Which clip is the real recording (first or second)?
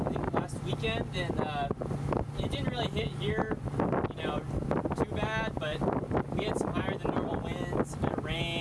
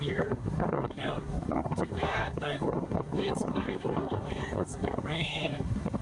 first